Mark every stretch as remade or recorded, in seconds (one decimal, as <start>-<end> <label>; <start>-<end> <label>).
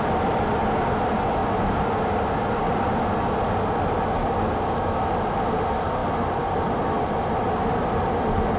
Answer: 0.0-4.2 recorded; 4.2-5.0 remade; 5.0-8.6 recorded